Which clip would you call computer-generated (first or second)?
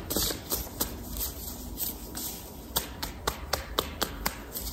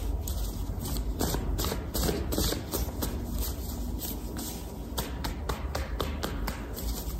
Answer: first